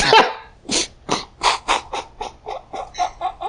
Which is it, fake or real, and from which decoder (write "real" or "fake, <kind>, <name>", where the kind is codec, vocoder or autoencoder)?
real